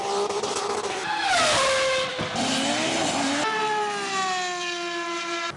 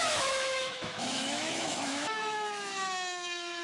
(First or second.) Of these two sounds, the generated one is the second